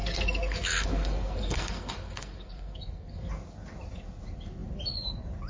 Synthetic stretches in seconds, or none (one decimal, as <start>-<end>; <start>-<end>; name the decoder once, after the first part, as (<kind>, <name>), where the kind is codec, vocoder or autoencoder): 0.0-3.3 (codec, SNAC)